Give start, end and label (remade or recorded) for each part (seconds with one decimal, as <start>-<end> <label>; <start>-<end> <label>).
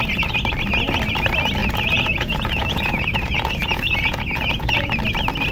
0.0-1.6 recorded; 1.6-4.9 remade; 4.9-5.5 recorded